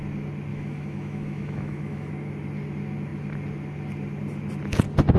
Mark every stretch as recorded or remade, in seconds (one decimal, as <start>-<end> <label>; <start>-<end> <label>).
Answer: 0.0-0.5 recorded; 0.5-2.1 remade; 2.1-5.2 recorded

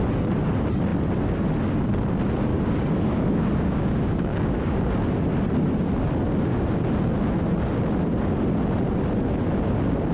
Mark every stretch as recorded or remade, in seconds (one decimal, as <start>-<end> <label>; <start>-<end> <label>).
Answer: 0.0-2.5 recorded; 2.5-4.9 remade; 4.9-10.1 recorded

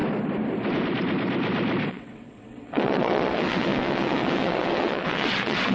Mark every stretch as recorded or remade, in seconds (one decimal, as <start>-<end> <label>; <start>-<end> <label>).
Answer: 0.0-1.9 recorded; 1.9-5.7 remade